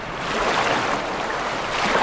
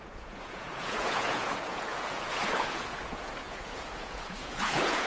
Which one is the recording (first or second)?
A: first